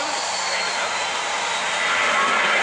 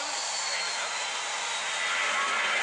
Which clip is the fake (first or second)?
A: first